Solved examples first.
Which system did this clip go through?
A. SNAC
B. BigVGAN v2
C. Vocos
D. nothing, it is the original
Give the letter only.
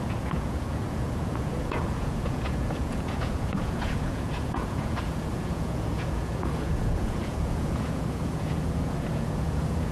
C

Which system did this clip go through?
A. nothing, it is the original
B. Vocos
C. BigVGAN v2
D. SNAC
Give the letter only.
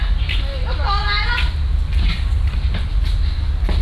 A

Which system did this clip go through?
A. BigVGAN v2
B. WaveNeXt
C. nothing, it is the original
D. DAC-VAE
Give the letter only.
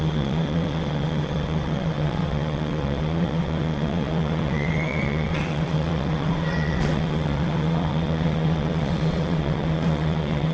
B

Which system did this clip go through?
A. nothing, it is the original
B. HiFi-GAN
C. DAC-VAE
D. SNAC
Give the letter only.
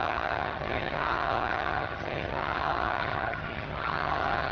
B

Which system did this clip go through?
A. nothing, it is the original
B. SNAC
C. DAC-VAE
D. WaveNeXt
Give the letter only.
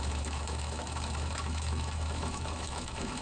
C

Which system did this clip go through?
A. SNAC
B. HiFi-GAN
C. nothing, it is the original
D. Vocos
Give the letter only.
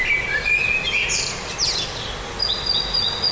C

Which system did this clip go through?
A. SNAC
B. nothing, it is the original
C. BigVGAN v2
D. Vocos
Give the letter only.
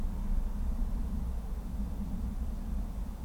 B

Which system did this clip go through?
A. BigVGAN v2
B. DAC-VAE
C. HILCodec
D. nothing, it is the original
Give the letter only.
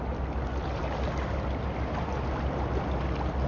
D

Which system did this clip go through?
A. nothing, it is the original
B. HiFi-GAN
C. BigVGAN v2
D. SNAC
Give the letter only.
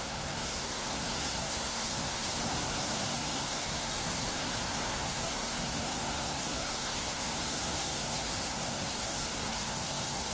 D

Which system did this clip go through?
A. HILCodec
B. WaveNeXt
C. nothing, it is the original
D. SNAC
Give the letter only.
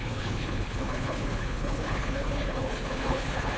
A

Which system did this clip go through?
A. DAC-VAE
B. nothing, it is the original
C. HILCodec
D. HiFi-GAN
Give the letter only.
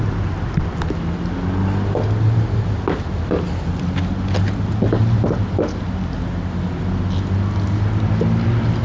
B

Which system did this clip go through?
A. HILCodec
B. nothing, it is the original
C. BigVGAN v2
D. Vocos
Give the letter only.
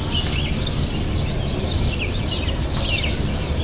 C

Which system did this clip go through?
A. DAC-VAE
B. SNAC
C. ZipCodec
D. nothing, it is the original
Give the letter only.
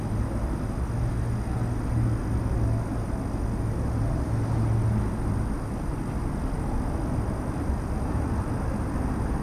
D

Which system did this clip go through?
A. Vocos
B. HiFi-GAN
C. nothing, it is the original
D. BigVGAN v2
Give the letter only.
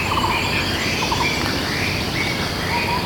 C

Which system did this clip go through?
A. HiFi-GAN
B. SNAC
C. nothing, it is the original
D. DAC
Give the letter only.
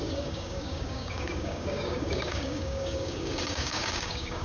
D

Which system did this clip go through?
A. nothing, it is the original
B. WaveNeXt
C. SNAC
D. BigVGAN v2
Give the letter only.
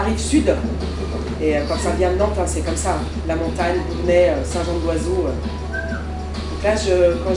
A